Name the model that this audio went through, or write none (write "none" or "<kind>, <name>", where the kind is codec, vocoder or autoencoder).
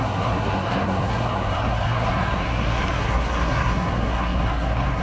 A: codec, SNAC